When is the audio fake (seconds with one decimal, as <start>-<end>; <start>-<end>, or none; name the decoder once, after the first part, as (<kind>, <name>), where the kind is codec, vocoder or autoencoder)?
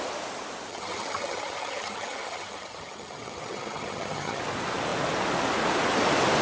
0.7-4.4 (vocoder, HiFi-GAN)